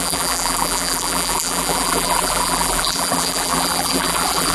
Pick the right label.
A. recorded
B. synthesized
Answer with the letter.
B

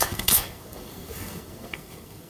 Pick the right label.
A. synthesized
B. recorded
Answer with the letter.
A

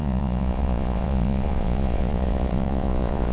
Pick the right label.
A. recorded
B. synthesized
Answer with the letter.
B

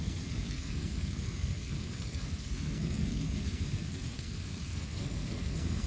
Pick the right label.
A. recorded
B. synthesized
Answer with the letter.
B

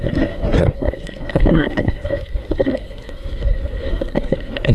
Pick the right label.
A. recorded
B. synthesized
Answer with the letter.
B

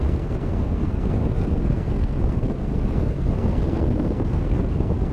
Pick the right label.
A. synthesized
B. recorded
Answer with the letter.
A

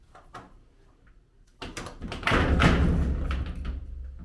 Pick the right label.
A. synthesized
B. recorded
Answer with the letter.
B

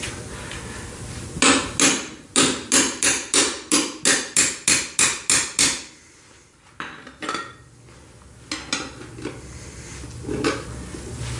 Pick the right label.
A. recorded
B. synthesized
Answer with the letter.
A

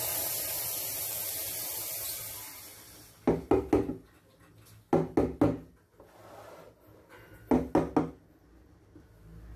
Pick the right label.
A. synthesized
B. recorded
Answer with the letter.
B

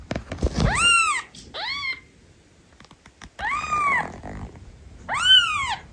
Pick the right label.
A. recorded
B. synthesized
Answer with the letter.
A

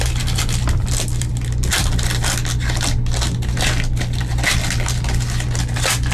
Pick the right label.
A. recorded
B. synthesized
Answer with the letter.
A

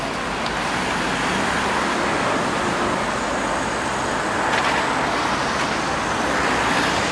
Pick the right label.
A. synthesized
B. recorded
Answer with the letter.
B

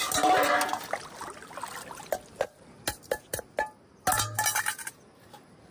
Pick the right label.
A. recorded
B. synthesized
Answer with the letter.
A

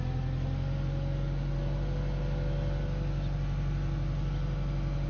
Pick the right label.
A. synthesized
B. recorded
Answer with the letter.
B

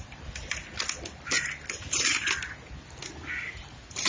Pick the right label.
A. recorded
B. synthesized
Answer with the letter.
A